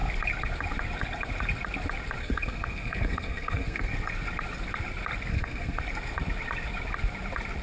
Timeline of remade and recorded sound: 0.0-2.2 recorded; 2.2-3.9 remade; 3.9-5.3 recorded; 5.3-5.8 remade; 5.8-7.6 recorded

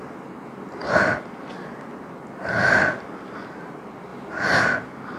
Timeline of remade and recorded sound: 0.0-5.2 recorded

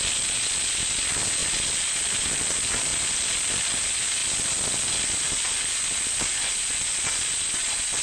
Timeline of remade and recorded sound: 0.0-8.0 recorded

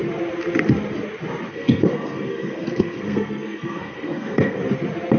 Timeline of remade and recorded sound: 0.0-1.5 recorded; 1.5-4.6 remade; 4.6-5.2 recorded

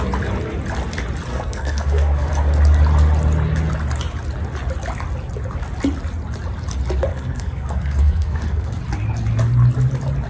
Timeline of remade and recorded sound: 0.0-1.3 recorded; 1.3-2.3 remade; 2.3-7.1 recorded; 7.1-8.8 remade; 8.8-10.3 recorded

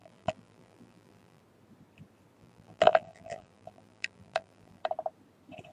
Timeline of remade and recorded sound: 0.0-1.4 remade; 1.4-2.4 recorded; 2.4-4.8 remade; 4.8-5.7 recorded

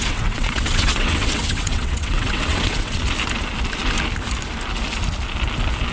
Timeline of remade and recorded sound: 0.0-3.0 remade; 3.0-5.9 recorded